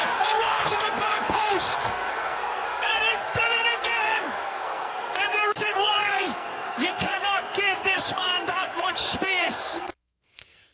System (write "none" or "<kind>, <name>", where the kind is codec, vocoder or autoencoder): codec, SNAC